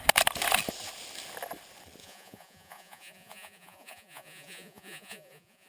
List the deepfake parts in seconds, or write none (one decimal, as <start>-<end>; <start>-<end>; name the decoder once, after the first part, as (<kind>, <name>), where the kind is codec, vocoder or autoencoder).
2.0-5.7 (vocoder, Vocos)